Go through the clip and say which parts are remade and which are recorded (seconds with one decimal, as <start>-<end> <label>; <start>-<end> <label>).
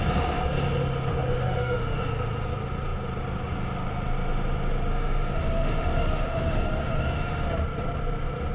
0.0-1.1 recorded; 1.1-2.0 remade; 2.0-4.9 recorded; 4.9-7.5 remade; 7.5-8.5 recorded